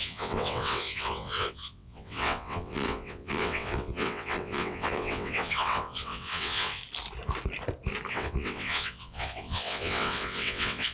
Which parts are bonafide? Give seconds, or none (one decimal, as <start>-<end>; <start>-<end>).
6.8-8.1